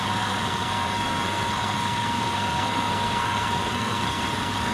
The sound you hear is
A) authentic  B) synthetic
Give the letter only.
B